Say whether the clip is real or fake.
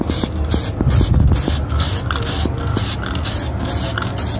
real